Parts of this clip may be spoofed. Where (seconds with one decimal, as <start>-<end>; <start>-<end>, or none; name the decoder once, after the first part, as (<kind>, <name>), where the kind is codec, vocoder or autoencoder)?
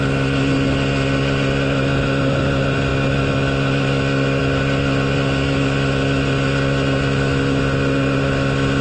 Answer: none